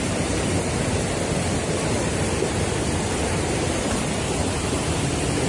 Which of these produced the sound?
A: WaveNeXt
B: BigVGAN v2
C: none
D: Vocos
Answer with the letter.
C